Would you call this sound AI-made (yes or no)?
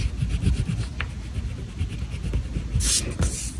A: no